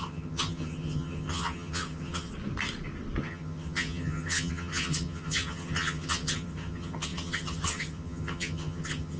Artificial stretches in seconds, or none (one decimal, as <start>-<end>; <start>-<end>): 0.0-2.3; 3.2-9.2